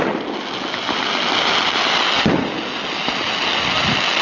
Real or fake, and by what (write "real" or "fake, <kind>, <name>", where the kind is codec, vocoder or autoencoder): real